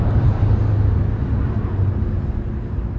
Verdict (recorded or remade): recorded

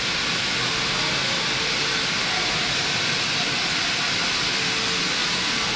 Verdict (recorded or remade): recorded